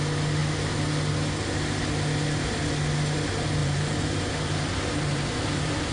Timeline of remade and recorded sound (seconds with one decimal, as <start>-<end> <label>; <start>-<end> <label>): 0.0-3.6 recorded; 3.6-5.9 remade